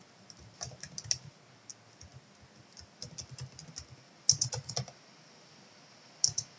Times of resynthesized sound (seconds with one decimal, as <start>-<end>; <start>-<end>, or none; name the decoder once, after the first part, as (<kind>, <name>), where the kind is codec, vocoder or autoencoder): none